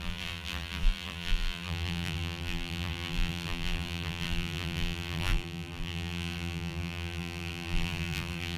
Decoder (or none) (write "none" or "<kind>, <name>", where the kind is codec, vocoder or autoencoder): vocoder, BigVGAN v2